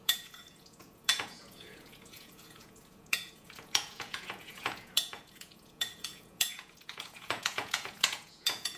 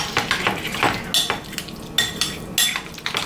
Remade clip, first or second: first